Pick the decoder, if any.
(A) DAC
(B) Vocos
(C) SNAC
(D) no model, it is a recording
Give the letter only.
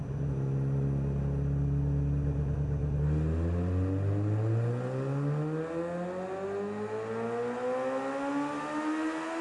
D